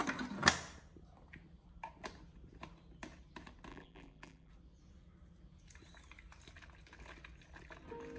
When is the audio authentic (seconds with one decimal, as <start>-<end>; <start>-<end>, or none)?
0.0-3.7; 4.5-8.2